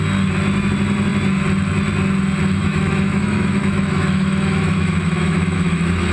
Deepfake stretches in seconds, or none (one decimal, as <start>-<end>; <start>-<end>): 2.6-6.1